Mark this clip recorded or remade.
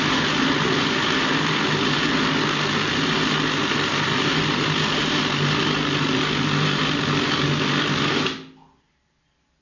recorded